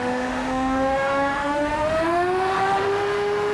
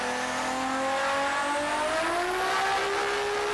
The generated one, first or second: first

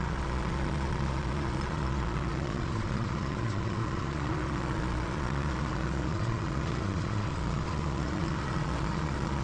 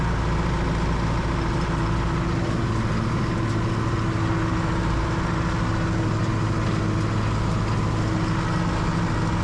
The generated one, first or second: first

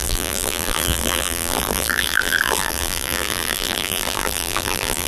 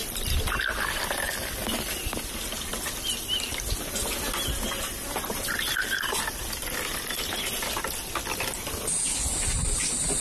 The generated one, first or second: first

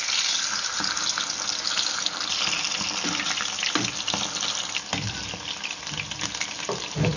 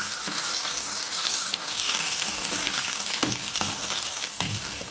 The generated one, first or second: second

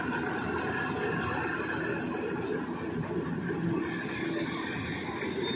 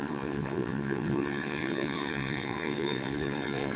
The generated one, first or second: second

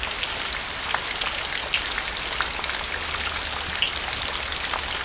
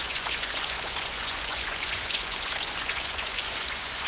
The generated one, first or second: second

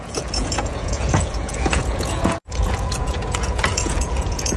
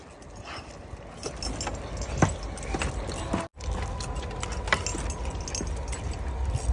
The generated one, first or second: first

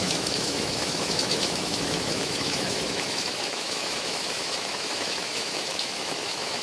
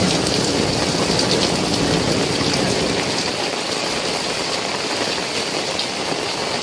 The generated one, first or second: first